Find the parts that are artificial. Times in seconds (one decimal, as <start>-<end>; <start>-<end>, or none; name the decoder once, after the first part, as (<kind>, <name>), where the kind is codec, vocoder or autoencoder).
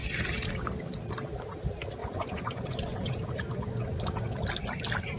2.0-4.0 (vocoder, Vocos)